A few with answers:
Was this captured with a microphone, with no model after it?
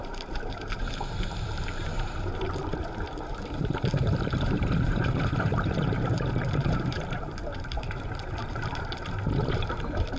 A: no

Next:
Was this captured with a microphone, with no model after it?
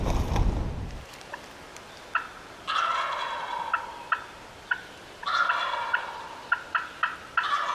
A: yes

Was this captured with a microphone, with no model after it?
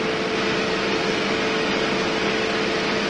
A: yes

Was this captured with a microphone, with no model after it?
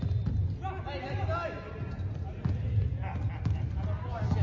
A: yes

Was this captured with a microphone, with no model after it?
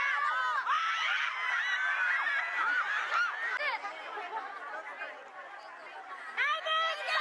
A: yes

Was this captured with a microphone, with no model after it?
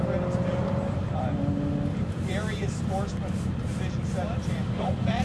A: yes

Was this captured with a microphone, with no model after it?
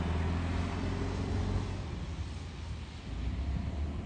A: yes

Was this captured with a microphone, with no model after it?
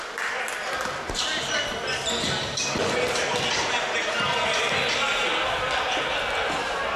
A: yes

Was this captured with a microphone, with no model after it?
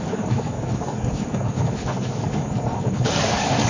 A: no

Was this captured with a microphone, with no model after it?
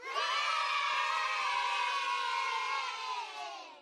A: yes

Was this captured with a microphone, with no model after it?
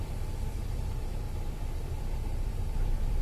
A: no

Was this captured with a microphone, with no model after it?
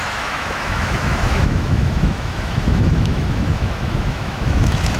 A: no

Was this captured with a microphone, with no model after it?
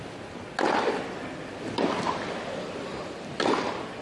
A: yes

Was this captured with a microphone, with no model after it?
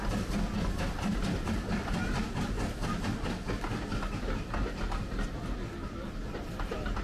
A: yes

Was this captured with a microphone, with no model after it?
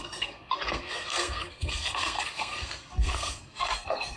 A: no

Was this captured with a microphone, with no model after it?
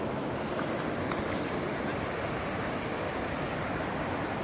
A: yes